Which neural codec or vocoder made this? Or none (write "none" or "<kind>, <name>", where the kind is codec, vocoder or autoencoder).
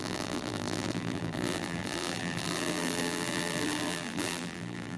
vocoder, BigVGAN v2